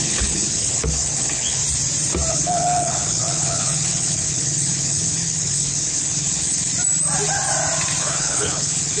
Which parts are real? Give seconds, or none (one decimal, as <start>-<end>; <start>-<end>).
1.6-2.3; 6.7-8.0